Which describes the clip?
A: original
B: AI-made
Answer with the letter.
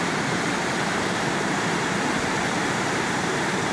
B